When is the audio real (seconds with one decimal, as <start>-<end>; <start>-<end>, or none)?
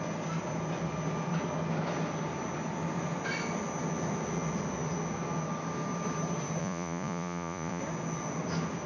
0.0-6.6; 7.8-8.9